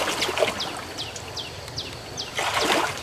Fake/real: real